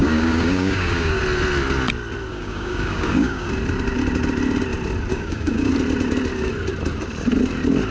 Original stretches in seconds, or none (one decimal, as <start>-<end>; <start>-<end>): 1.2-2.3; 3.5-5.1; 5.7-7.9